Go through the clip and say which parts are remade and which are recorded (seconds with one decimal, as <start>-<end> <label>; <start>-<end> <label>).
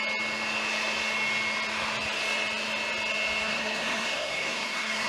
0.0-3.4 recorded; 3.4-5.1 remade